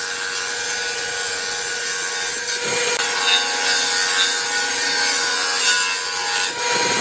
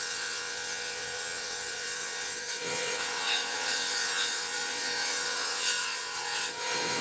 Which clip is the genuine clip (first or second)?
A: first